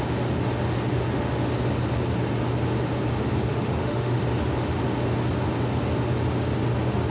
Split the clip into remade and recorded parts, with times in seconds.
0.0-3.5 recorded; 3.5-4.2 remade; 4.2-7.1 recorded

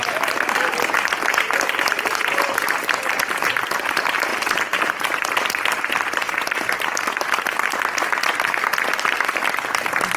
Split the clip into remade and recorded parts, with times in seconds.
0.0-10.2 recorded

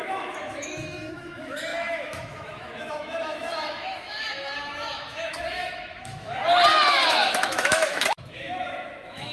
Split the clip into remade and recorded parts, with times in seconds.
0.0-6.4 remade; 6.4-6.9 recorded; 6.9-9.3 remade

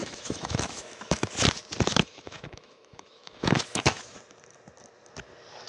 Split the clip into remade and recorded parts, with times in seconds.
0.0-1.3 remade; 1.3-1.9 recorded; 1.9-4.0 remade; 4.0-5.7 recorded

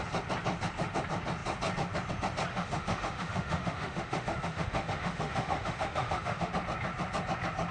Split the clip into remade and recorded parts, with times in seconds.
0.0-2.5 recorded; 2.5-6.5 remade; 6.5-7.7 recorded

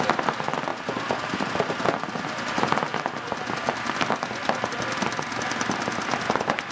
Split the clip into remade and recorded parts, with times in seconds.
0.0-6.7 recorded

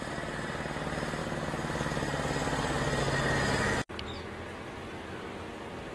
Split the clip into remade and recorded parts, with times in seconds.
0.0-5.9 recorded

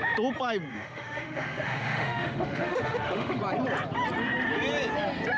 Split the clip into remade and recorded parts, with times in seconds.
0.0-0.7 recorded; 0.7-3.4 remade; 3.4-5.4 recorded